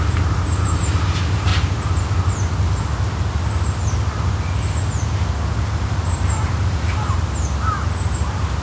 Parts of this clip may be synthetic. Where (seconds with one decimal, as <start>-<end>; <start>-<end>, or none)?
0.0-1.5; 5.9-8.6